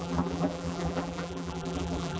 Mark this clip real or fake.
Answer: fake